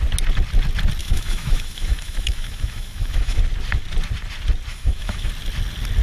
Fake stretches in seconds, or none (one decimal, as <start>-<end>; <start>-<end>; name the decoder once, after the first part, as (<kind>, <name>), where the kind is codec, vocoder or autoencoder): 1.0-3.4 (autoencoder, DAC-VAE); 4.7-5.3